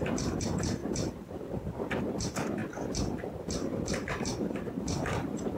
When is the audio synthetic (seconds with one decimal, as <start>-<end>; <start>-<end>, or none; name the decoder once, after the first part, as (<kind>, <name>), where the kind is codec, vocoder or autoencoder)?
0.0-2.6 (vocoder, BigVGAN v2); 3.4-5.6